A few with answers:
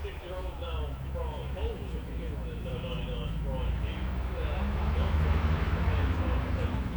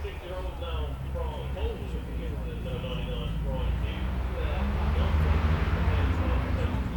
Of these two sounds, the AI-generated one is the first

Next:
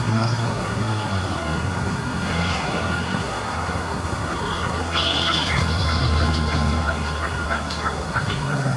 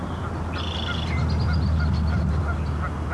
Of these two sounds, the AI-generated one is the first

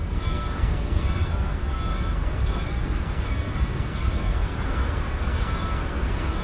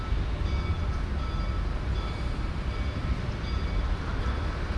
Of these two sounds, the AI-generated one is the first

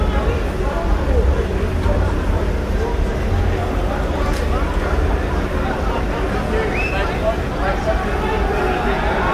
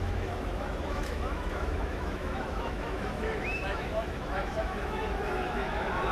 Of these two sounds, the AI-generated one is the second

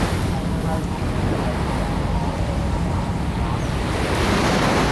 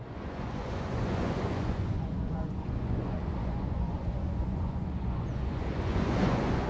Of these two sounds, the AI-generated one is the second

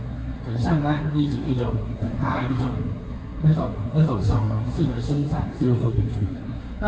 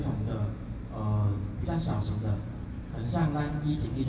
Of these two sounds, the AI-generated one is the first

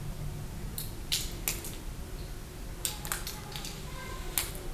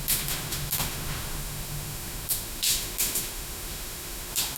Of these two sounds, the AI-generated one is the second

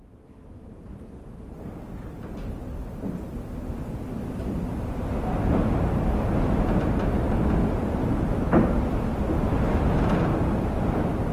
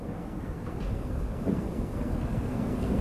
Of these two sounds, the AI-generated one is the second